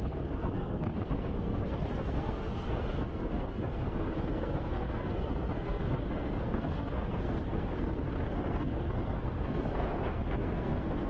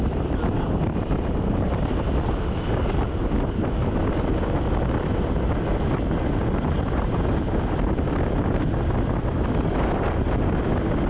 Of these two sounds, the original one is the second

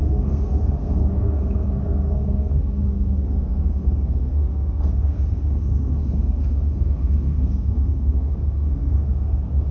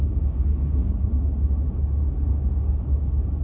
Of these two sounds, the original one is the second